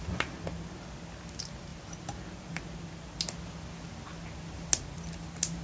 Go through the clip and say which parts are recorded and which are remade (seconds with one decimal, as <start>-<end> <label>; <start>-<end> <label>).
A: 0.0-5.6 recorded